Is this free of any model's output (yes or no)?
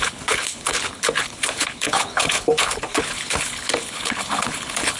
no